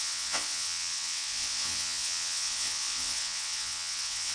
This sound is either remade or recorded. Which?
remade